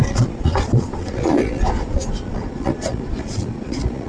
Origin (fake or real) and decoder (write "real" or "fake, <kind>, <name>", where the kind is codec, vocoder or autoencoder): fake, vocoder, Vocos